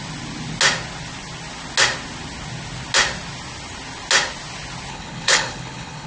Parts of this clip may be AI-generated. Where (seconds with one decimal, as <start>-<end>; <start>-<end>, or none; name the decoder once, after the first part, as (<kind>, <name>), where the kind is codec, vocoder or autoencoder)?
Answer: 4.9-6.1 (codec, HILCodec)